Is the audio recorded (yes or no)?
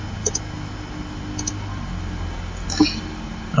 yes